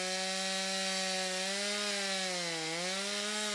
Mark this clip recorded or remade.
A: recorded